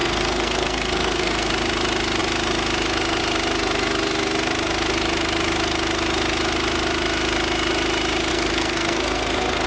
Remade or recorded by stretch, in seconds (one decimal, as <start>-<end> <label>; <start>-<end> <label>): 0.0-1.5 remade; 1.5-8.3 recorded; 8.3-9.7 remade